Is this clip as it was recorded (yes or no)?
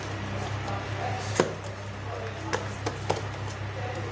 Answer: yes